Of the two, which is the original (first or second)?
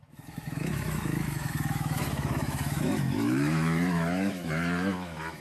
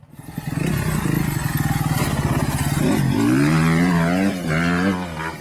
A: second